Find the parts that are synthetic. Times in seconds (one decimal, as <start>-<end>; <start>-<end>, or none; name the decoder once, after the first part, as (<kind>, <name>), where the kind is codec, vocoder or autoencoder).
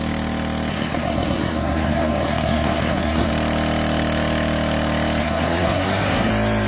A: 0.7-3.3 (codec, SNAC); 5.2-6.3